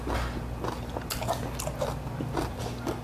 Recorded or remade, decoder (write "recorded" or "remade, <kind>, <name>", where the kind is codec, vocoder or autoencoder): recorded